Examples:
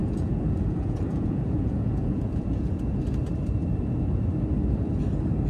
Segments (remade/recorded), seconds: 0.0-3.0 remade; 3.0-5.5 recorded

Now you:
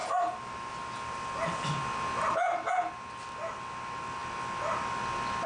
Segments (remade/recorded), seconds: 0.0-5.5 recorded

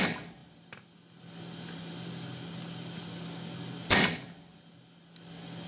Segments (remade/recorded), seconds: 0.0-5.7 recorded

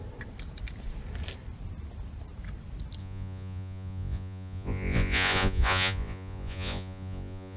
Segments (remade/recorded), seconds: 0.0-3.0 recorded; 3.0-7.6 remade